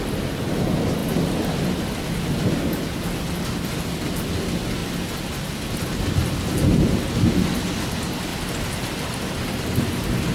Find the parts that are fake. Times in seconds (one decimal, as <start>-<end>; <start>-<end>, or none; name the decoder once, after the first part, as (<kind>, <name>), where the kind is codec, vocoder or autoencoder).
none